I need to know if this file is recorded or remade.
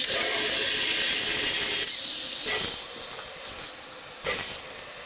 recorded